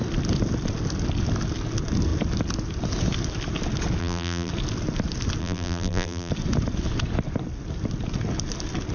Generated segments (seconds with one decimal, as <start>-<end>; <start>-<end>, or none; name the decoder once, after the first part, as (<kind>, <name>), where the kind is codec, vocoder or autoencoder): 4.0-4.5 (vocoder, BigVGAN v2); 5.4-6.3